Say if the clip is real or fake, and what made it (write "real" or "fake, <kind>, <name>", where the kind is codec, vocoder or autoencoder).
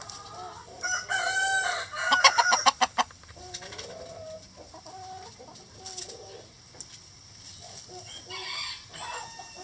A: real